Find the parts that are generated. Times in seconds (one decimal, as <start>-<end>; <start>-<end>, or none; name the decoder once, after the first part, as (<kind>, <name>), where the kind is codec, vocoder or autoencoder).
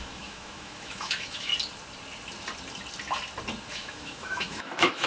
0.0-1.5 (autoencoder, DAC-VAE); 3.7-5.1